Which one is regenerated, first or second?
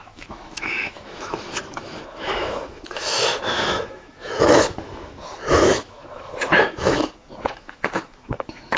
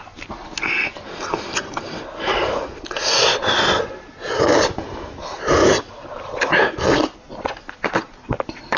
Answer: first